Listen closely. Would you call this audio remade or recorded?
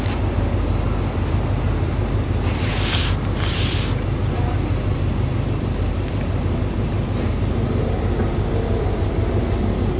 recorded